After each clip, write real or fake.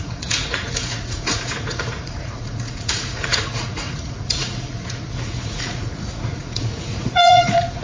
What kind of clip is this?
fake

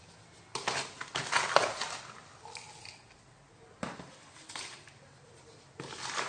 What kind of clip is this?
real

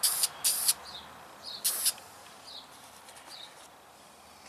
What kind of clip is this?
real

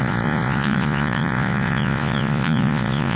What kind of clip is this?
fake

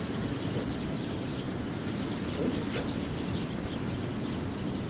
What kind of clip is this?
real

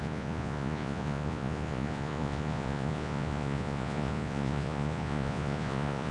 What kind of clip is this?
fake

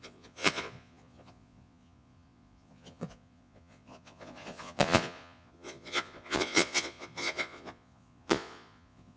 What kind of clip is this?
fake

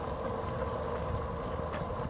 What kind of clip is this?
real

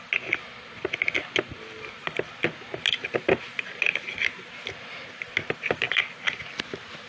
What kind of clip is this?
real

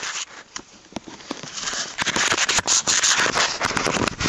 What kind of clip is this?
fake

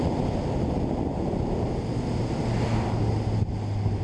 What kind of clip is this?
real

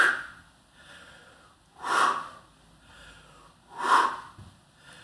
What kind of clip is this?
real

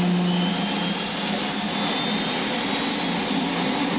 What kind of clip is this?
real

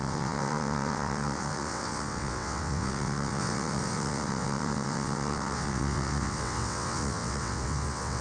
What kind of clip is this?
fake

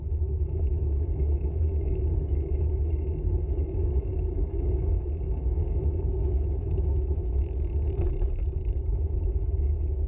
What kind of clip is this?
fake